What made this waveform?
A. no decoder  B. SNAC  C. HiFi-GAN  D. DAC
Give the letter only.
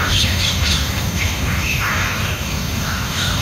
D